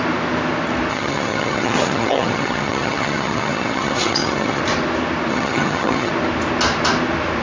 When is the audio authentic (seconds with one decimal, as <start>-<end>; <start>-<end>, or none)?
0.0-0.9; 4.6-5.3; 6.1-7.4